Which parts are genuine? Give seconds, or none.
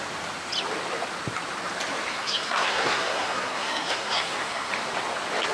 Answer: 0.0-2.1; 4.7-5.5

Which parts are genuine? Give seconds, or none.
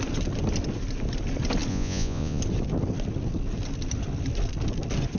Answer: 0.0-1.7; 2.4-5.2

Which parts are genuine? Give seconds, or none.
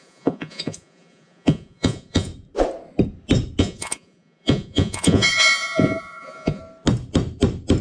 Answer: 2.3-3.6; 6.6-7.8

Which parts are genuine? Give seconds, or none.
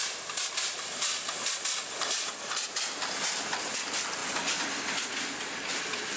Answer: 0.0-6.2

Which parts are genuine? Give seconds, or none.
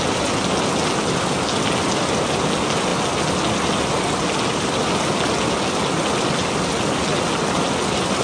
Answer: 0.0-8.2